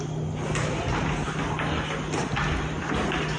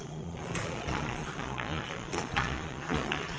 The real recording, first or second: first